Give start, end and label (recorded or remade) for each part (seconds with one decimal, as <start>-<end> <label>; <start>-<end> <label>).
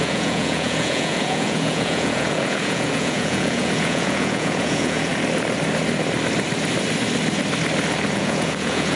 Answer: 0.0-5.1 remade; 5.1-8.1 recorded; 8.1-9.0 remade